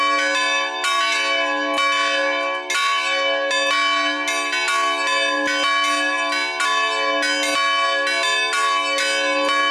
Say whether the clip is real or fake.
real